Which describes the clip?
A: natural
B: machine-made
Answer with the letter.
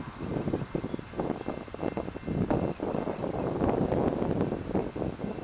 A